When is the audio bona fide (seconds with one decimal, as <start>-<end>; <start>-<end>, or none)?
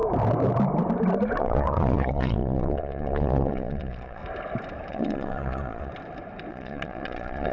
0.0-1.4; 4.2-4.9; 5.9-6.5